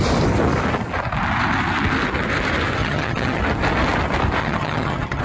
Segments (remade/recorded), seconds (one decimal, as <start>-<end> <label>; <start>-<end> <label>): 0.0-2.8 recorded; 2.8-3.4 remade; 3.4-4.4 recorded; 4.4-5.2 remade